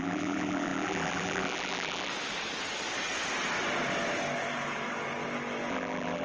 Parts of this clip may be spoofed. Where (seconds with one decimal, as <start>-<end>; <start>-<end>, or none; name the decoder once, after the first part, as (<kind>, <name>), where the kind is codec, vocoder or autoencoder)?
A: 0.0-2.1 (vocoder, BigVGAN v2); 5.7-6.2